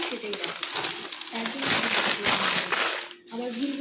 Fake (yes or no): no